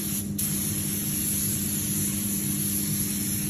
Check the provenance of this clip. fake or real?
real